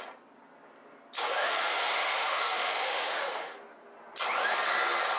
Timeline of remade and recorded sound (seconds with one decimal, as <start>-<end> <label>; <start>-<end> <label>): 0.0-1.4 recorded; 1.4-3.5 remade; 3.5-5.2 recorded